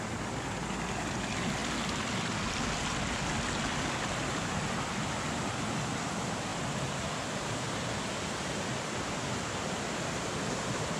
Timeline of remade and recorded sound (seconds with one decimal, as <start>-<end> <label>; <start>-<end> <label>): 0.0-11.0 recorded